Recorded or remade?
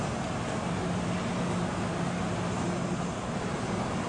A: recorded